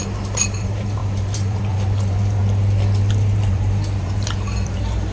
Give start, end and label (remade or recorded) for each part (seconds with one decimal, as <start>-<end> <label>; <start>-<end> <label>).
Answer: 0.0-2.4 remade; 2.4-3.1 recorded; 3.1-5.1 remade